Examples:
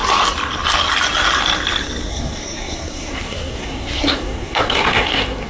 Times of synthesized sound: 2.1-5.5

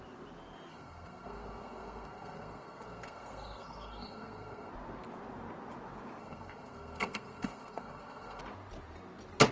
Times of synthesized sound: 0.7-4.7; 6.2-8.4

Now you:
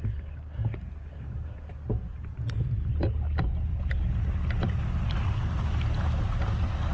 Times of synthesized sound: none